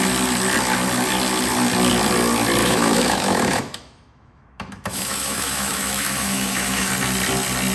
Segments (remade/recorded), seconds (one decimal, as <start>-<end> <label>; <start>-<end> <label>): 0.0-2.6 recorded; 2.6-6.9 remade; 6.9-7.7 recorded